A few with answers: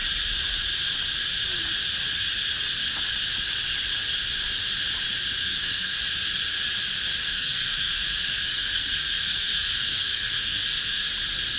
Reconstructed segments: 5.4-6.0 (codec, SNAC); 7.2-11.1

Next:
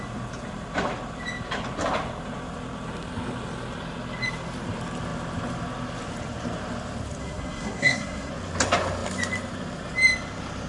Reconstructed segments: 7.2-8.3 (codec, SNAC)

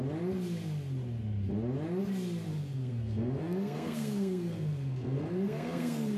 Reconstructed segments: 2.5-6.2 (codec, SNAC)

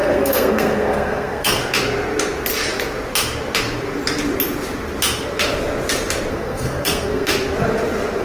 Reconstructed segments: 0.0-1.6 (codec, SNAC); 6.3-7.3